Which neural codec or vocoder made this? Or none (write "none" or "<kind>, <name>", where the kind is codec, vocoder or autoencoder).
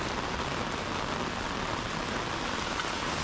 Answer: none